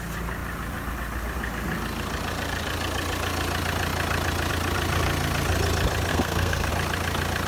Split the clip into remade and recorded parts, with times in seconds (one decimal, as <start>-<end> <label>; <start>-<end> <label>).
0.0-6.1 recorded; 6.1-6.7 remade; 6.7-7.5 recorded